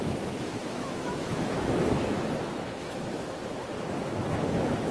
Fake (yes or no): yes